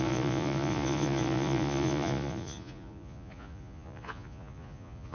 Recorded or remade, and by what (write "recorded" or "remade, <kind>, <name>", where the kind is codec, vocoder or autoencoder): remade, vocoder, Vocos